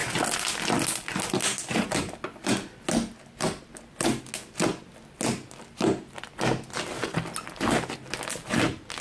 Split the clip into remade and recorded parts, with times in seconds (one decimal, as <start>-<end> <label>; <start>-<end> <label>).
0.0-9.0 recorded